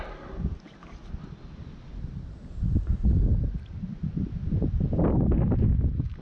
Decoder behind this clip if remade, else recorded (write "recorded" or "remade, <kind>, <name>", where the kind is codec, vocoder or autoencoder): recorded